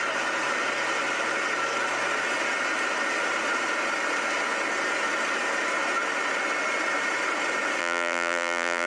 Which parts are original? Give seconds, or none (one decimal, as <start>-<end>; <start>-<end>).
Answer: 0.0-7.8